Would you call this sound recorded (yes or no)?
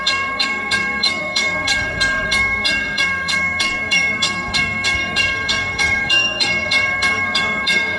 no